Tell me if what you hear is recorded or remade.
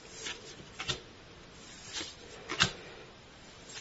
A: recorded